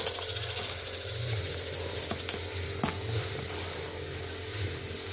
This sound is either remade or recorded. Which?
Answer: recorded